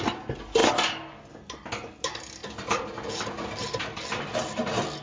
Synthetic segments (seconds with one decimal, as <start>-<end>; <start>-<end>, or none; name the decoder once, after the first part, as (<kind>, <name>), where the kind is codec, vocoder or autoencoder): none